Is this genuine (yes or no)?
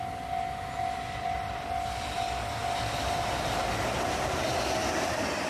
yes